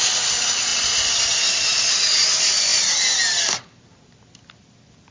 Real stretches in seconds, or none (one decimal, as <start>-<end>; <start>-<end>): 0.0-5.1